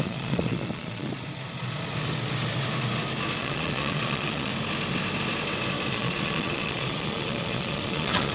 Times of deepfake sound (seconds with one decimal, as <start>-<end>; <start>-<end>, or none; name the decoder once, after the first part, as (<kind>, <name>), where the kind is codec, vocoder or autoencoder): 0.0-1.1 (vocoder, Vocos); 3.4-4.5; 5.9-8.3